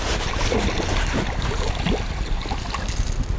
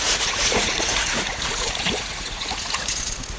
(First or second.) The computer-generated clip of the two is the second